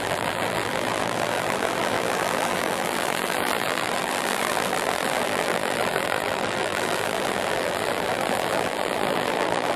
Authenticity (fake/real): fake